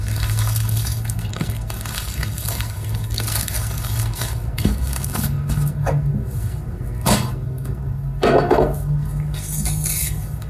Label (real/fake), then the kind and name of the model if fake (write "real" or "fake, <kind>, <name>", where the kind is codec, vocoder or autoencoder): fake, codec, SNAC